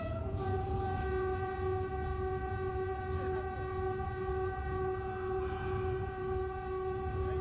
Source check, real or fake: fake